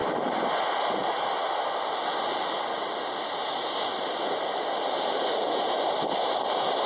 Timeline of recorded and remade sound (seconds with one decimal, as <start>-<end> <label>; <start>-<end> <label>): 0.0-6.9 recorded